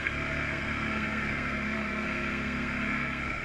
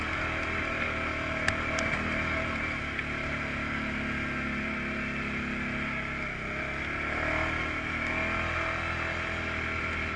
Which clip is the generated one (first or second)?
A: first